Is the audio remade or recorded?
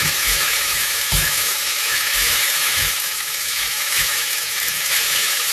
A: remade